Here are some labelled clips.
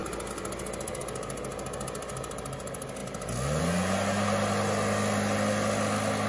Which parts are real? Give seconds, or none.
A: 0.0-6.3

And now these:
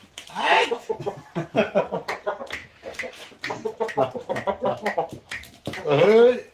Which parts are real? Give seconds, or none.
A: 1.0-2.6; 3.4-4.7; 6.0-6.5

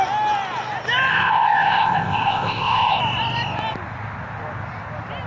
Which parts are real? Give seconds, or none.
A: 0.0-1.1; 3.0-5.3

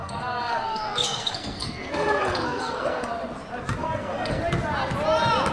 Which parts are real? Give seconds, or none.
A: 3.1-3.8; 4.4-5.5

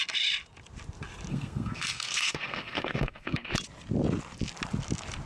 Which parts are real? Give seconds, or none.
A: 0.0-1.3; 3.5-5.3

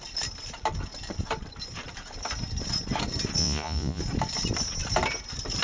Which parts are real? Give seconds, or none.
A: 0.0-3.4; 4.0-5.6

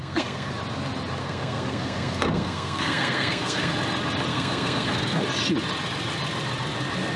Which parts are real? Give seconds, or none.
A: 0.5-1.2; 3.7-4.3; 5.2-7.2

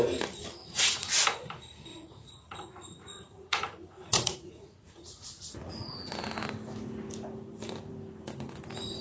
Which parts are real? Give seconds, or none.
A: 0.0-0.6; 1.1-1.9; 5.9-9.0